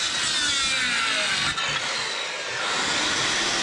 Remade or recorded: recorded